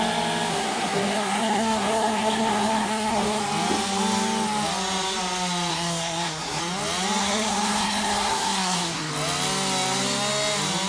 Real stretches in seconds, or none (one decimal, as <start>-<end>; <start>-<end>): 0.0-0.5; 3.4-5.7; 6.6-7.2; 9.1-10.9